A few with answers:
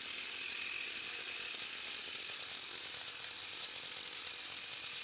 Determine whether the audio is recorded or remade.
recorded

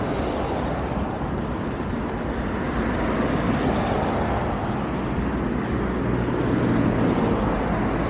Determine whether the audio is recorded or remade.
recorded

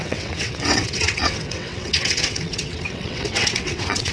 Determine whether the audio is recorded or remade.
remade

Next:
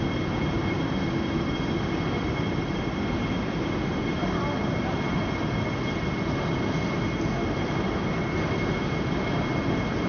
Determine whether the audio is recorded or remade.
recorded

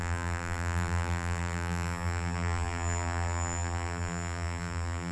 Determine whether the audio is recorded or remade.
remade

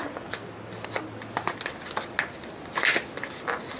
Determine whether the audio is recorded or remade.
recorded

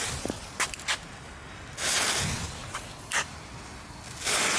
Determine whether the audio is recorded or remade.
recorded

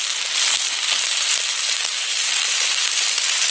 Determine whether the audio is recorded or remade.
recorded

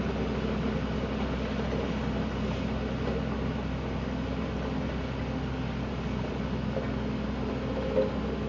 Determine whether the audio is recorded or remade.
recorded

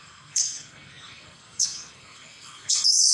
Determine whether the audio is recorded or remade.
remade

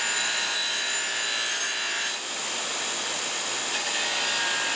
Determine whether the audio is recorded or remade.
recorded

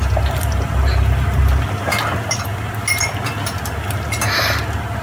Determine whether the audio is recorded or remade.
recorded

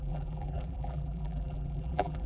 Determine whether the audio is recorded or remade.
remade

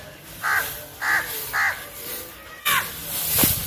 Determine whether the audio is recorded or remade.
recorded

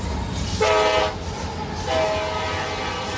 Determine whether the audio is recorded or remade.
recorded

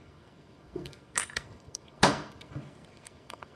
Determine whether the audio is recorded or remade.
remade